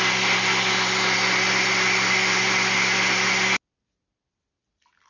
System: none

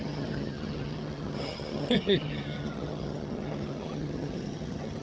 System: vocoder, HiFi-GAN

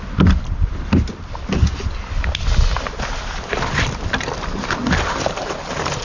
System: none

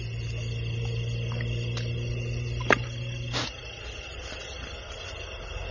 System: none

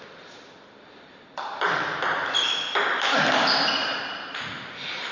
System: none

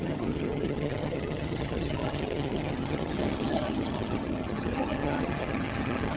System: vocoder, HiFi-GAN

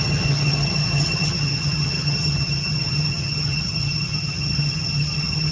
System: vocoder, HiFi-GAN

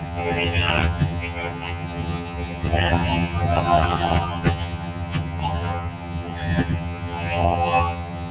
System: vocoder, HiFi-GAN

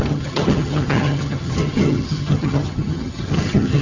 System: vocoder, HiFi-GAN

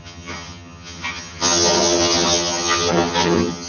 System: vocoder, HiFi-GAN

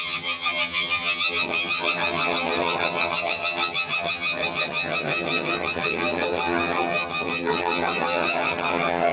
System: vocoder, HiFi-GAN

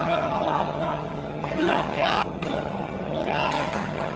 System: vocoder, HiFi-GAN